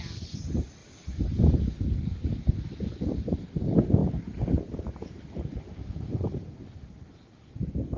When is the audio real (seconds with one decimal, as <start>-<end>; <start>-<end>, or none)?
0.0-0.8; 1.6-8.0